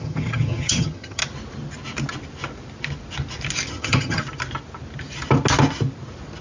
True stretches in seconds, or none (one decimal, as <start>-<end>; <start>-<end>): 1.2-3.7; 4.2-6.4

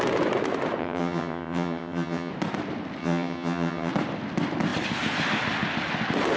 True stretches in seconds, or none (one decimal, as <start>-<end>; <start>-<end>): 0.0-0.8; 2.3-3.0; 3.9-6.4

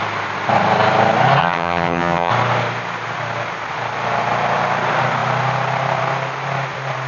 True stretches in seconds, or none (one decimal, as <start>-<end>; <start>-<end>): 0.0-1.4; 2.3-7.1